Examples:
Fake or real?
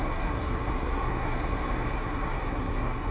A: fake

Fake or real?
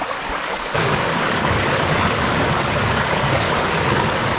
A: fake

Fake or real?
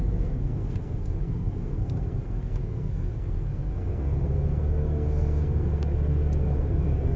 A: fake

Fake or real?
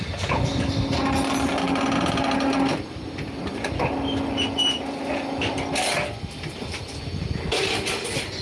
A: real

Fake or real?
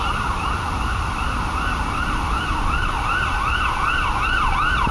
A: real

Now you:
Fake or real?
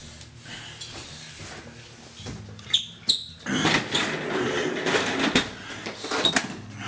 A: real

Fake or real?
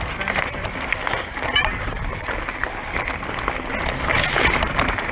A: real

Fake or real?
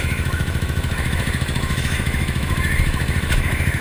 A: fake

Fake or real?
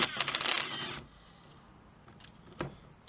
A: real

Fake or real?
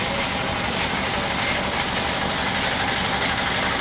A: real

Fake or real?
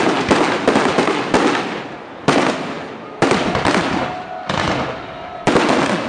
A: real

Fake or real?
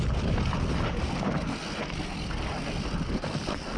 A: real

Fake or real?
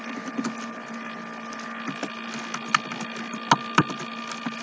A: real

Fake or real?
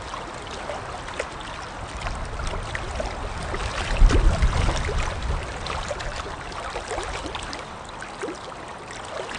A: real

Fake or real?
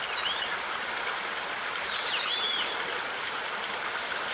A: real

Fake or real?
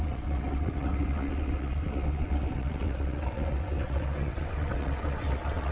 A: fake